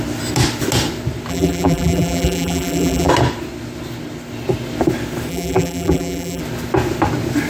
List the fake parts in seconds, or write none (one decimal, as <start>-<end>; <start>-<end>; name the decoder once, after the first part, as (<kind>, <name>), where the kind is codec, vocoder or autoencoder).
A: 1.3-3.1 (vocoder, BigVGAN v2); 5.3-6.4